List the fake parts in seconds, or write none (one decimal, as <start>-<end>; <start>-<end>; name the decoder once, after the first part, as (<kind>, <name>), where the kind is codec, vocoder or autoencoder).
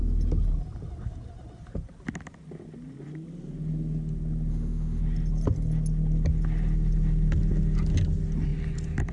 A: 4.5-5.0 (autoencoder, DAC-VAE)